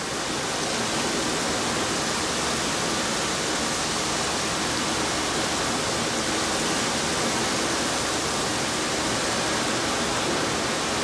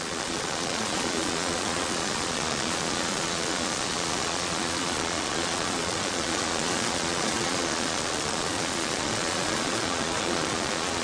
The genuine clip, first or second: first